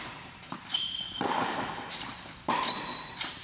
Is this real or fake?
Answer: fake